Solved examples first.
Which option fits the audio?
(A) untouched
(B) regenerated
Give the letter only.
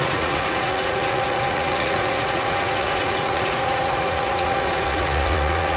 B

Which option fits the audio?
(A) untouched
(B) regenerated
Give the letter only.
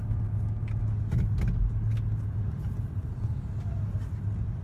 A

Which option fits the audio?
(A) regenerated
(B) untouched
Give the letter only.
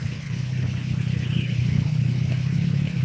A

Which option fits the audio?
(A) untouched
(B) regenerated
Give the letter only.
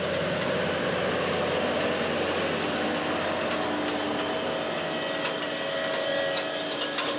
A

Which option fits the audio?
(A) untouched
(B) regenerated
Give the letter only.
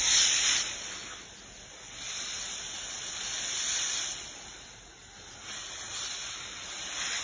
A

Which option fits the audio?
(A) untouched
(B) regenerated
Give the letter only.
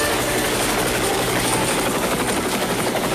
B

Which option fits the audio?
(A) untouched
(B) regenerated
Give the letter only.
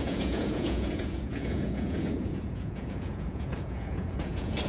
B